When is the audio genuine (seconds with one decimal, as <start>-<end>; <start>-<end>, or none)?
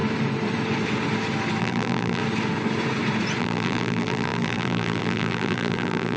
0.0-1.6; 2.2-3.4